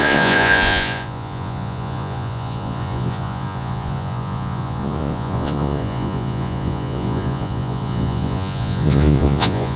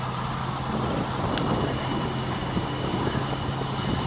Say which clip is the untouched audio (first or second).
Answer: second